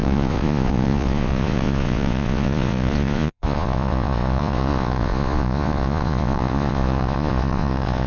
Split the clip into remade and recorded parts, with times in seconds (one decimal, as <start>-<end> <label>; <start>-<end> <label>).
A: 0.0-8.1 remade